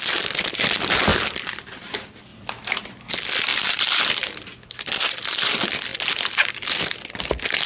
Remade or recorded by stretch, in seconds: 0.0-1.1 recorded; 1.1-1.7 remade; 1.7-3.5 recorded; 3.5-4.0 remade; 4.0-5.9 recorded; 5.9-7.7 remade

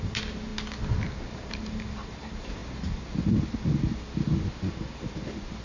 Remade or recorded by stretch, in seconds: 0.0-0.5 remade; 0.5-1.3 recorded; 1.3-2.6 remade; 2.6-4.7 recorded; 4.7-5.6 remade

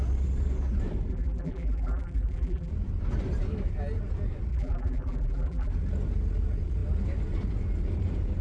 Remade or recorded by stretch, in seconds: 0.0-1.1 recorded; 1.1-2.7 remade; 2.7-4.5 recorded; 4.5-5.7 remade; 5.7-8.4 recorded

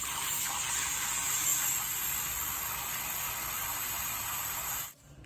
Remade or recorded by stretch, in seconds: 0.0-3.7 recorded; 3.7-5.3 remade